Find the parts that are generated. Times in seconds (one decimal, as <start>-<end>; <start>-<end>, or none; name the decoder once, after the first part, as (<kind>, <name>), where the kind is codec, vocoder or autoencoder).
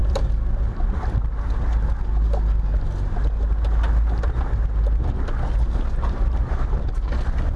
0.0-2.0 (vocoder, BigVGAN v2)